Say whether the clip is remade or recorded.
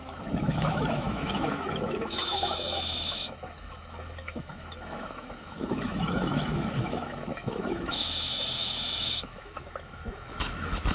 remade